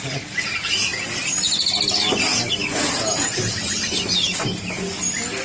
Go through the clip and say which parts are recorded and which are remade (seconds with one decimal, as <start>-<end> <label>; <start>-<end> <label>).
0.0-5.4 recorded